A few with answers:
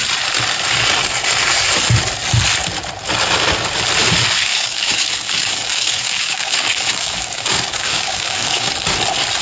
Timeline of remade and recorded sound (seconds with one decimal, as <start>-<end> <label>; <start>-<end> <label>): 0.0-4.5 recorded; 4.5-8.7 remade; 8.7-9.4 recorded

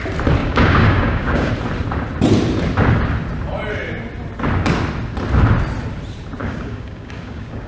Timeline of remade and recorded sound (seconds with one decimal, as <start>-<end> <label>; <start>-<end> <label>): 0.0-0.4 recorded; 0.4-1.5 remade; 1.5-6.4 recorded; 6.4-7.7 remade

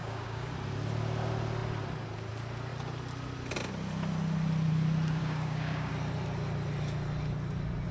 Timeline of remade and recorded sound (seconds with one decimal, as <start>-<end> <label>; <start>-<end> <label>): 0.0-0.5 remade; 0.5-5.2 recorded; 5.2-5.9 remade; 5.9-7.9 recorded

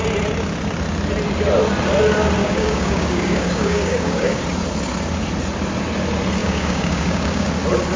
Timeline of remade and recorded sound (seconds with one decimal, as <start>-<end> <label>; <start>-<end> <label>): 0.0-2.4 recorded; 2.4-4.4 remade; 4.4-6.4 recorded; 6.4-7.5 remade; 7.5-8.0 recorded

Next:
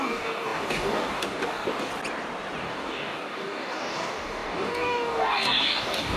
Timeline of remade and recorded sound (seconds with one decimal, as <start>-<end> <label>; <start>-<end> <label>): 0.0-1.9 remade; 1.9-2.6 recorded; 2.6-6.2 remade

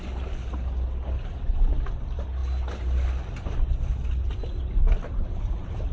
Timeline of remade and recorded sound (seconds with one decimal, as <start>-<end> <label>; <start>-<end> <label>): 0.0-5.9 recorded

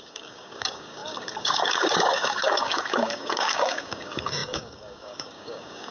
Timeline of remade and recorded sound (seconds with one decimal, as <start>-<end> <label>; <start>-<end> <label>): 0.0-5.9 remade